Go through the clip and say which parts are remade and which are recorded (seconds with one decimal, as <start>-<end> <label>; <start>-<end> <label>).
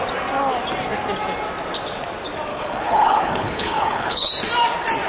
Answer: 0.0-2.5 recorded; 2.5-4.3 remade; 4.3-5.1 recorded